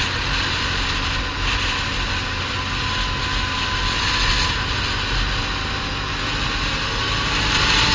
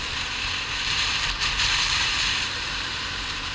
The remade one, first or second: second